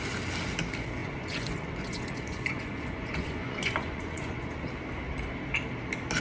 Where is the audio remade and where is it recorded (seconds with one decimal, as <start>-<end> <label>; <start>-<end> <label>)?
0.0-1.0 recorded; 1.0-4.7 remade; 4.7-6.2 recorded